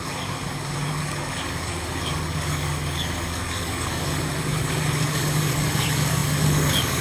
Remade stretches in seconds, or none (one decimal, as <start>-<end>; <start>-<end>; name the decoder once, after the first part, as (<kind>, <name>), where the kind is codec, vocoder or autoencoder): 0.0-7.0 (codec, DAC)

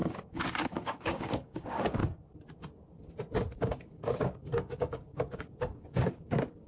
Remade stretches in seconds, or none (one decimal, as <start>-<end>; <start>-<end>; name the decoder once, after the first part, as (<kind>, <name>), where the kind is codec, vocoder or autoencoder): 0.0-2.0 (codec, DAC); 3.6-6.7

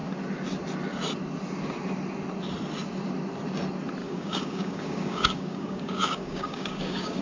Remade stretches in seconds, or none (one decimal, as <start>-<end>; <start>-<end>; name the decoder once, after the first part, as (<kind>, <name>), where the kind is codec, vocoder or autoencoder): 4.0-7.2 (codec, DAC)

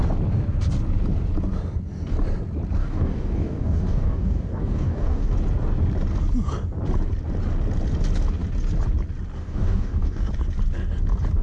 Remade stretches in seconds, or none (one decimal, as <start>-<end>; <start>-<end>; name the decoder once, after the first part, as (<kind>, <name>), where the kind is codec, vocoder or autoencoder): 2.8-5.3 (codec, DAC); 9.4-10.3